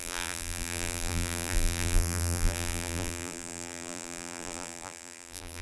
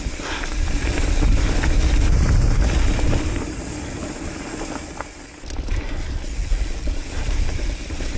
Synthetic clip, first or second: first